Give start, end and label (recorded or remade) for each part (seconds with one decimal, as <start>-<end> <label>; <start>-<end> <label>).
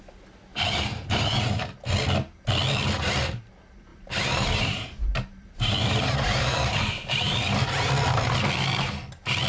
0.0-0.5 recorded; 0.5-1.5 remade; 1.5-3.9 recorded; 3.9-7.9 remade; 7.9-9.5 recorded